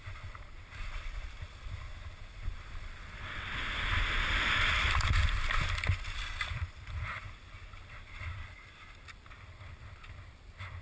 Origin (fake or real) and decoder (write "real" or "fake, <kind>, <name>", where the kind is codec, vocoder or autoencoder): real